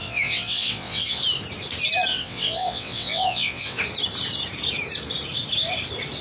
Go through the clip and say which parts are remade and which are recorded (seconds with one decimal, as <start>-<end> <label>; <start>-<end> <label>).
0.0-1.2 remade; 1.2-2.1 recorded; 2.1-3.8 remade; 3.8-6.2 recorded

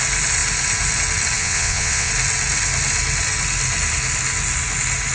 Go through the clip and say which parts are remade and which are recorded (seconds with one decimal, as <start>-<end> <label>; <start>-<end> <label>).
0.0-1.4 recorded; 1.4-2.1 remade; 2.1-5.1 recorded

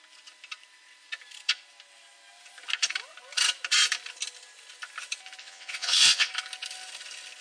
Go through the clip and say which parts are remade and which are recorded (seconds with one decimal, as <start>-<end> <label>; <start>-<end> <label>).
0.0-5.4 recorded; 5.4-6.3 remade; 6.3-7.4 recorded

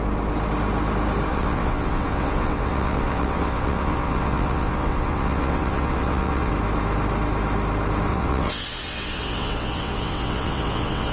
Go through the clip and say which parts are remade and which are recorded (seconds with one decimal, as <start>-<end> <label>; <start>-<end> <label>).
0.0-1.3 recorded; 1.3-6.5 remade; 6.5-8.1 recorded; 8.1-11.1 remade